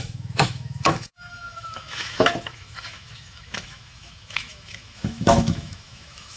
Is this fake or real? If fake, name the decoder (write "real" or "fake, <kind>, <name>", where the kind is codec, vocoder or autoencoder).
fake, autoencoder, DAC-VAE